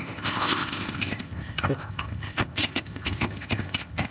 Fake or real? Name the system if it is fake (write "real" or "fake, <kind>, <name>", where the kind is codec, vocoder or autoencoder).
fake, codec, ZipCodec